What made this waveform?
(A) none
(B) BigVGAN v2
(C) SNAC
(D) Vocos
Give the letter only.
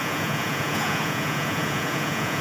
D